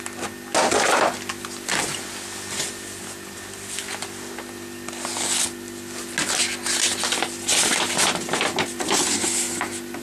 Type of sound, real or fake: real